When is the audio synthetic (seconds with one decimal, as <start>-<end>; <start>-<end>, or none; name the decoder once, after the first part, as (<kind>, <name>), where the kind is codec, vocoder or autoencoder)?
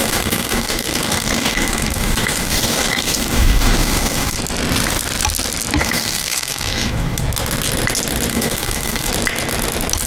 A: 0.0-4.4 (codec, DAC); 5.8-7.2; 8.3-9.1